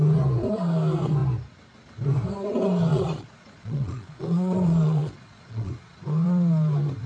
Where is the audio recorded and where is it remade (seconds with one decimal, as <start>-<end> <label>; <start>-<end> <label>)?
0.0-2.9 recorded; 2.9-5.7 remade; 5.7-7.1 recorded